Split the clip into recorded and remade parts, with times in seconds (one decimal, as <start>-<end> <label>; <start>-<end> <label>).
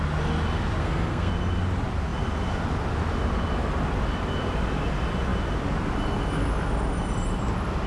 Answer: 0.0-0.8 recorded; 0.8-1.3 remade; 1.3-7.9 recorded